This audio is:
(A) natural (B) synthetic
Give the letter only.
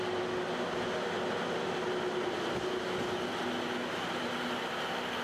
A